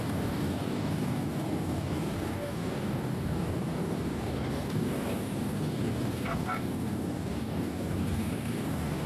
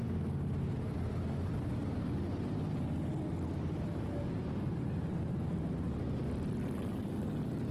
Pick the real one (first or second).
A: second